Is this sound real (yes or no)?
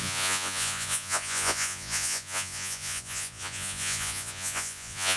no